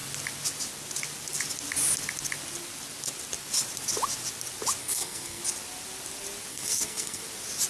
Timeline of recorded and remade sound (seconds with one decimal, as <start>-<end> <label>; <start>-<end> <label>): 0.0-4.8 recorded; 4.8-5.4 remade; 5.4-6.5 recorded; 6.5-7.2 remade; 7.2-7.7 recorded